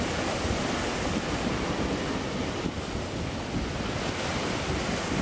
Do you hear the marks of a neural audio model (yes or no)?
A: no